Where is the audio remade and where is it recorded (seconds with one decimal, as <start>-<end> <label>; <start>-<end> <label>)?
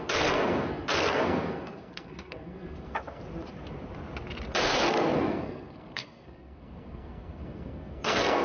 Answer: 0.0-3.2 remade; 3.2-4.6 recorded; 4.6-8.4 remade